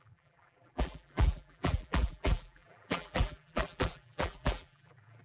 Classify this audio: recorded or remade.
remade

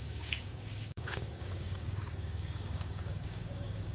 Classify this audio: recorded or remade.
remade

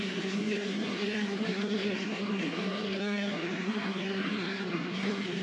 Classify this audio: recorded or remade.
remade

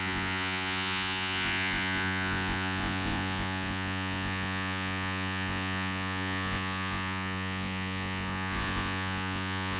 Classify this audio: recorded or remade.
remade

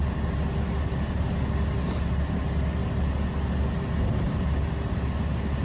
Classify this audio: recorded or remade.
recorded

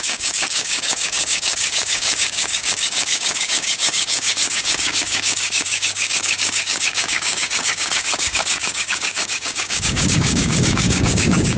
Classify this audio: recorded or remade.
remade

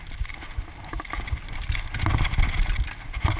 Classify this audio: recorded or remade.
recorded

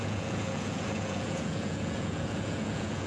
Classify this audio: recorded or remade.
remade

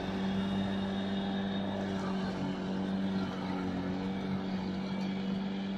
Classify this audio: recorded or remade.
recorded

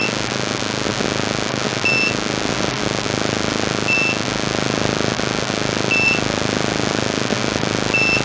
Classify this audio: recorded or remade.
recorded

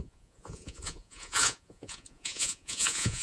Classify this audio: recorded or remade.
remade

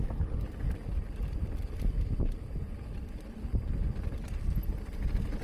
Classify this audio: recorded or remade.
recorded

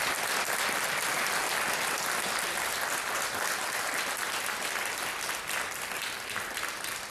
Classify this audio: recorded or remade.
recorded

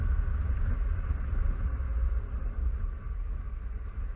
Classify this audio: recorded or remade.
recorded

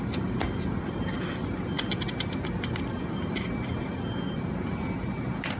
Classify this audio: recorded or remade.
recorded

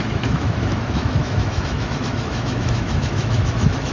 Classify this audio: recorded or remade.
remade